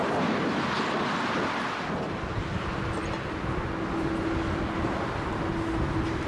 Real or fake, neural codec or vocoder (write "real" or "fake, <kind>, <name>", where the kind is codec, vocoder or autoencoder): real